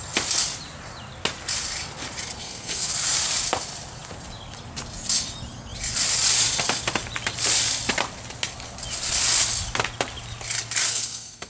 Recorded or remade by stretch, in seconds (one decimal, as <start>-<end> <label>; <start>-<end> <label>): 0.0-2.4 recorded; 2.4-2.9 remade; 2.9-10.9 recorded; 10.9-11.5 remade